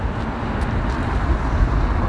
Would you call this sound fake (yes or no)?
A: no